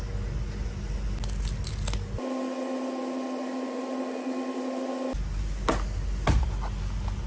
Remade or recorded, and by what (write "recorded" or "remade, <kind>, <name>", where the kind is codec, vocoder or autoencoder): recorded